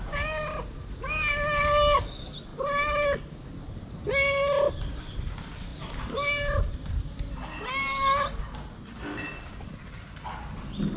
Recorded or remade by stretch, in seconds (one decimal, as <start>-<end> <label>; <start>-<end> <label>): 0.0-11.0 recorded